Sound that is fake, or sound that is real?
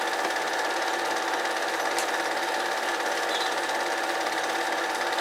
real